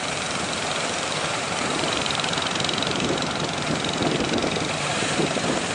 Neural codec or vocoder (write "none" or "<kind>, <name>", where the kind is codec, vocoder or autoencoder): vocoder, BigVGAN v2